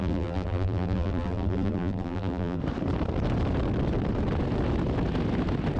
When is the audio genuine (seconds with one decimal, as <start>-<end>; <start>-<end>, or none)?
2.6-5.8